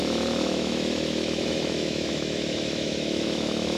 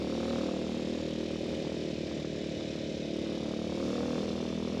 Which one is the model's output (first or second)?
first